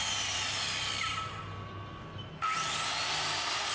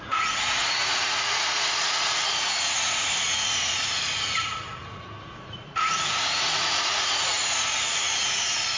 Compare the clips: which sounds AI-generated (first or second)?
second